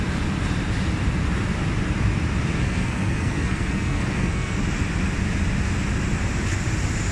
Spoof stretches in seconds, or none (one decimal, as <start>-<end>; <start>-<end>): 2.6-4.6